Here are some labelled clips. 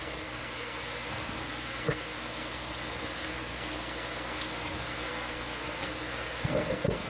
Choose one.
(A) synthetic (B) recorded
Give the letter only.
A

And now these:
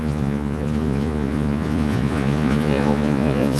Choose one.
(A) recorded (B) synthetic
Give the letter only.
B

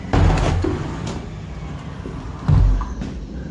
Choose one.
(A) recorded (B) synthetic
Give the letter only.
A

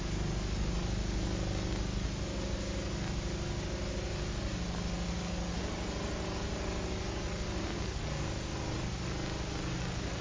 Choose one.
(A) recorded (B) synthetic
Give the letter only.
A